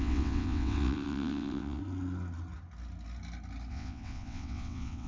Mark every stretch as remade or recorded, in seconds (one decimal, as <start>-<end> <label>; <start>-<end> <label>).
0.0-1.8 remade; 1.8-3.7 recorded; 3.7-5.1 remade

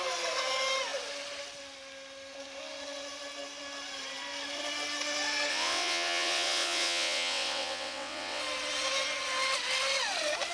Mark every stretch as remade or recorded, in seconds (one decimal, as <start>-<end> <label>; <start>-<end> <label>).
0.0-5.5 recorded; 5.5-8.4 remade; 8.4-10.5 recorded

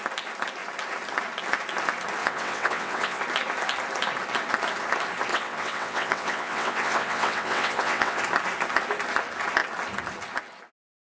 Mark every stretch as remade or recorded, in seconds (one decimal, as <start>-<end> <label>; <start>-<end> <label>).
0.0-2.2 recorded; 2.2-3.2 remade; 3.2-5.3 recorded; 5.3-8.2 remade; 8.2-11.1 recorded